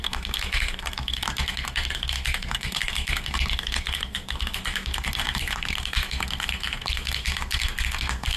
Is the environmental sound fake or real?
fake